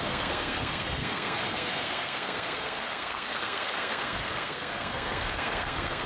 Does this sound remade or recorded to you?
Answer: remade